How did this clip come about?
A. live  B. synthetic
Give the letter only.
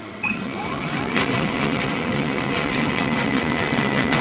B